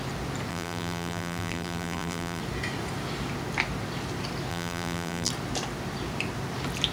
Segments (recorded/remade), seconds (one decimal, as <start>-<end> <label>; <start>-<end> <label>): 0.0-0.5 recorded; 0.5-2.4 remade; 2.4-4.5 recorded; 4.5-5.3 remade; 5.3-6.9 recorded